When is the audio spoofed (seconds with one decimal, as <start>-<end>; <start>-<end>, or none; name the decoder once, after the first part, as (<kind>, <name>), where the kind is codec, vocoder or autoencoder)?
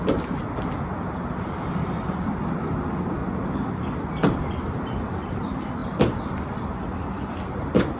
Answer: 0.0-3.2 (vocoder, BigVGAN v2); 3.7-8.0